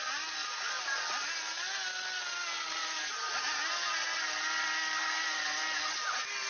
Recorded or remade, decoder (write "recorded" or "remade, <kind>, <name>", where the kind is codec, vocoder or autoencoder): recorded